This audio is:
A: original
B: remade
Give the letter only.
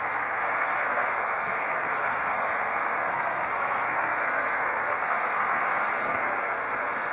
B